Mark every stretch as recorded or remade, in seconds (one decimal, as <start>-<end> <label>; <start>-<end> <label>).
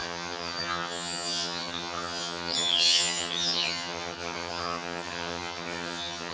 0.0-6.3 remade